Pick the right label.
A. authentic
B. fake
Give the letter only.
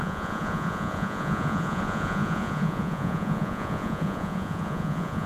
B